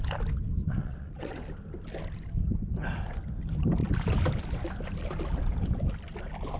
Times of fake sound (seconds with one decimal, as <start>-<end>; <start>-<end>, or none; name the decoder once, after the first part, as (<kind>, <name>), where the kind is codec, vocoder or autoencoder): 0.6-1.3 (vocoder, WaveNeXt)